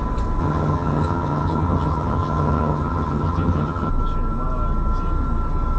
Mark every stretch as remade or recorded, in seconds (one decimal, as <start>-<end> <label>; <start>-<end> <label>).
0.0-0.4 recorded; 0.4-3.9 remade; 3.9-5.8 recorded